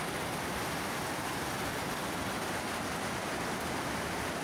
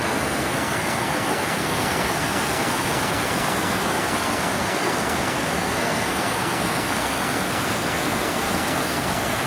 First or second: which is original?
first